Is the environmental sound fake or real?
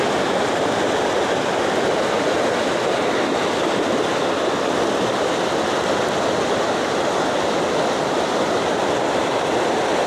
real